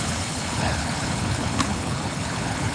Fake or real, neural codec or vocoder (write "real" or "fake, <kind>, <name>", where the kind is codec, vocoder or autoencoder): fake, codec, HILCodec